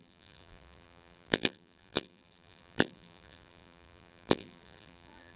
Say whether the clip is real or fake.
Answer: fake